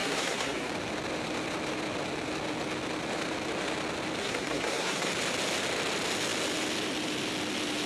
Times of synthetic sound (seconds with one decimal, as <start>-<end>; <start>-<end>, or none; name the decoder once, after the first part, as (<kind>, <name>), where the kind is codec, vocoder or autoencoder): 0.0-0.7 (codec, SNAC); 4.2-5.1